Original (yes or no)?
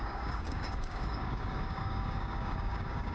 no